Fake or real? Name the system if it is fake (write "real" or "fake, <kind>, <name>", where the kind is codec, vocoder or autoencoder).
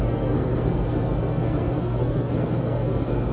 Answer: fake, codec, SNAC